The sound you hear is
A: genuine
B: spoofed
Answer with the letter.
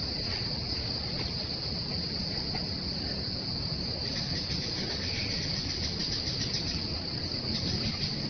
B